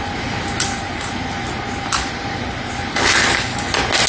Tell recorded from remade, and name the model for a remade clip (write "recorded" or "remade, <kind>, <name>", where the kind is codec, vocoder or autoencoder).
recorded